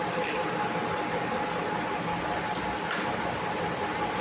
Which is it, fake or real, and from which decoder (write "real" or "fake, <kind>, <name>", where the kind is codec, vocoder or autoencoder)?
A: real